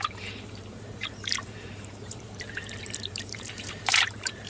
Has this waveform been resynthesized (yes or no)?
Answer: yes